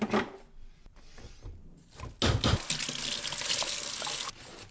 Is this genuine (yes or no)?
yes